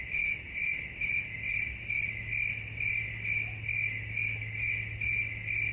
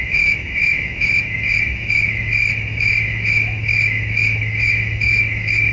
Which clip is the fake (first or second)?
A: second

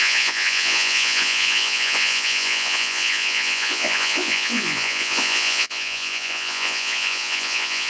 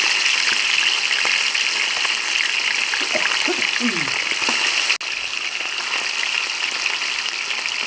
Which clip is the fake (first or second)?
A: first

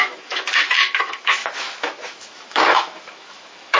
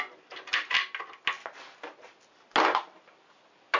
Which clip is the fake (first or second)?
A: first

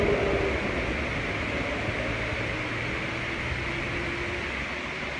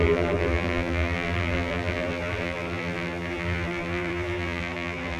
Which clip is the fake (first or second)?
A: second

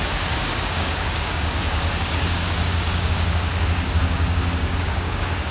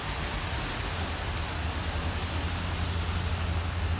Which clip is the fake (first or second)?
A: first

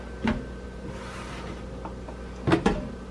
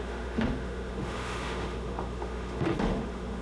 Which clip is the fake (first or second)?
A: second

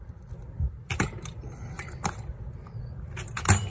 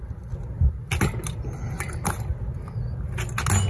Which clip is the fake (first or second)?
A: first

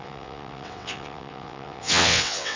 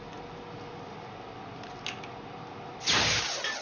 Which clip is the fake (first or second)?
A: first